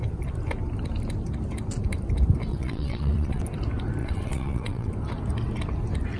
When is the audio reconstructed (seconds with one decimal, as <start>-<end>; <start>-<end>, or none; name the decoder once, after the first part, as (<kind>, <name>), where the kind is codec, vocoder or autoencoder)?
2.5-3.4 (vocoder, WaveNeXt); 4.0-4.9